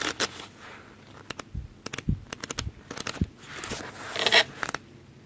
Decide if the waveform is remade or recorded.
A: recorded